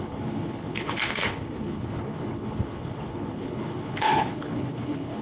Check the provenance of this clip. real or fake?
fake